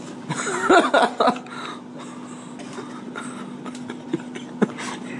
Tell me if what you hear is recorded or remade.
recorded